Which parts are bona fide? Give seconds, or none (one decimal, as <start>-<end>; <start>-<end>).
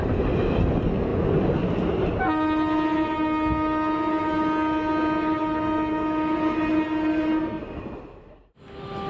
0.0-9.1